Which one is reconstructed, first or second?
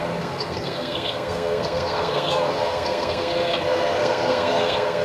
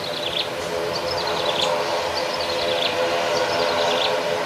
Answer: first